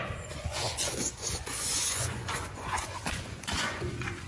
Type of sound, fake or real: fake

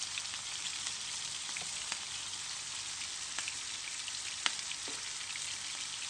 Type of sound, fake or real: real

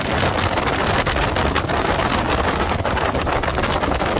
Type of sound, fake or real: real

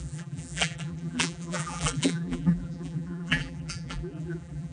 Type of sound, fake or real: fake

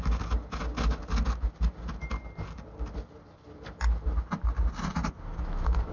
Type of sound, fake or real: real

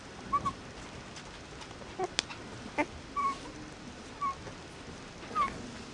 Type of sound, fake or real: real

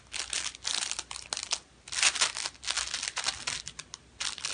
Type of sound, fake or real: real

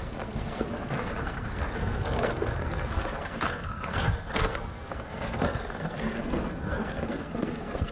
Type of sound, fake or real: fake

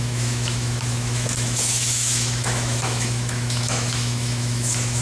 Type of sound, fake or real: fake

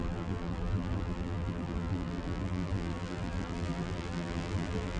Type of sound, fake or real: fake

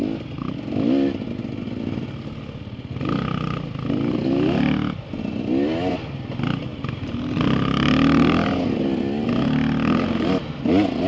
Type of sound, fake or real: real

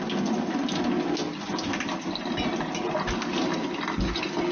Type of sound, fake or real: real